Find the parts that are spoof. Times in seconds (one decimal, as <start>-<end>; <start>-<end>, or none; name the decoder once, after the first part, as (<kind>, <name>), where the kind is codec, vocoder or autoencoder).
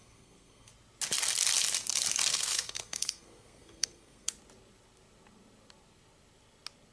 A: 0.0-0.7 (codec, SNAC); 2.3-4.3